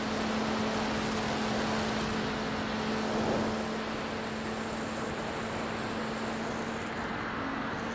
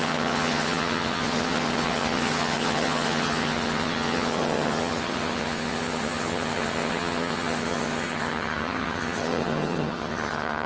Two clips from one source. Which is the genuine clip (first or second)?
first